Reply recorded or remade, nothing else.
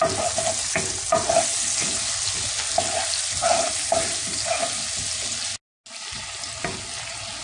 recorded